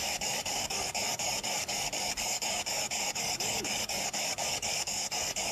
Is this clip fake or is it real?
fake